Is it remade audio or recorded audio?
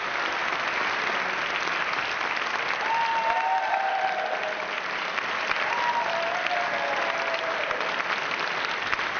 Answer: recorded